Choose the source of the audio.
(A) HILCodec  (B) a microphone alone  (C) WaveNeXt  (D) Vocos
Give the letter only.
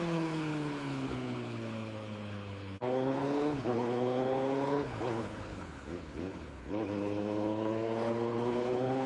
A